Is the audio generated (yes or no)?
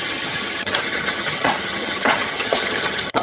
yes